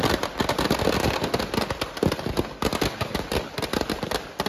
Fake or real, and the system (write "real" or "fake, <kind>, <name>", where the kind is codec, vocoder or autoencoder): real